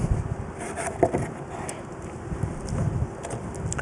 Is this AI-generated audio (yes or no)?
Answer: no